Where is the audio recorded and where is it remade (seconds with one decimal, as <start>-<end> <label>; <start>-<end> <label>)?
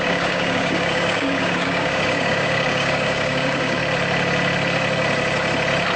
0.0-3.8 remade; 3.8-6.0 recorded